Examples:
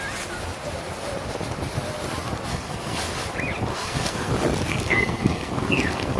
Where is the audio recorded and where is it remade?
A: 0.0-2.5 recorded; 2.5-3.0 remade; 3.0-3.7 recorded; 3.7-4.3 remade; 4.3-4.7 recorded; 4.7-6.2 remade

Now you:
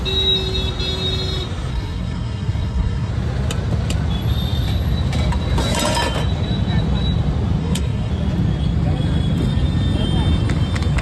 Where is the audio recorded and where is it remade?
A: 0.0-1.7 recorded; 1.7-3.1 remade; 3.1-7.6 recorded; 7.6-8.1 remade; 8.1-11.0 recorded

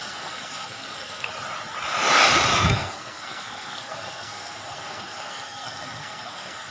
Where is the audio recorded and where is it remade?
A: 0.0-1.3 remade; 1.3-2.5 recorded; 2.5-6.7 remade

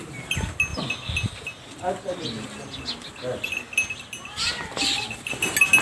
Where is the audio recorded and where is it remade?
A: 0.0-5.8 recorded

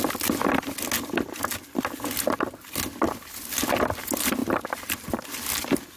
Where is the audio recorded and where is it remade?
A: 0.0-6.0 recorded

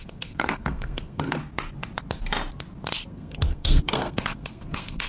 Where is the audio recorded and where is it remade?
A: 0.0-1.4 remade; 1.4-3.1 recorded; 3.1-5.1 remade